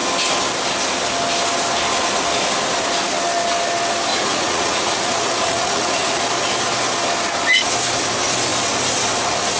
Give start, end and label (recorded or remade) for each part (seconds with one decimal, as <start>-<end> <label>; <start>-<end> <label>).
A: 0.0-4.1 recorded; 4.1-6.2 remade; 6.2-9.6 recorded